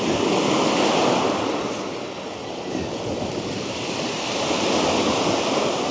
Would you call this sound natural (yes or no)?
yes